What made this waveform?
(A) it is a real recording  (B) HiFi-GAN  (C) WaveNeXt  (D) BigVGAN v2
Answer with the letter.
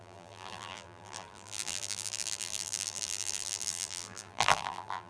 D